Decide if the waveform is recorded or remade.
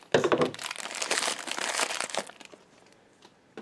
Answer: recorded